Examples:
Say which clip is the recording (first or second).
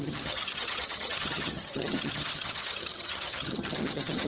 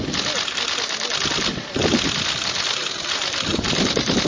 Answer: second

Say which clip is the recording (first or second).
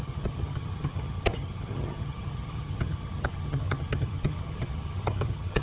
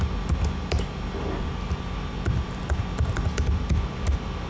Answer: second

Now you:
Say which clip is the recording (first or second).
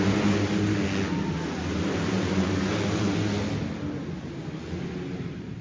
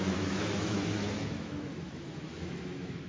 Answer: first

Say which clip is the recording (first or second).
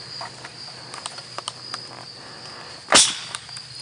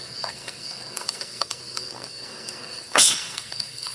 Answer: first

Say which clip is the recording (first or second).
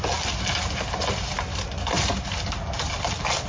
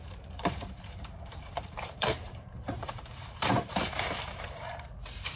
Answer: first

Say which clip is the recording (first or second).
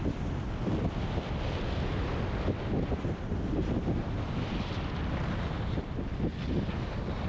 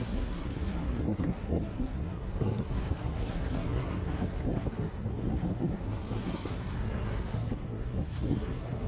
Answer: first